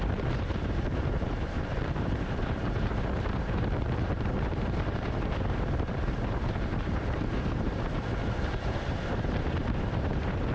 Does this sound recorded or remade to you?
remade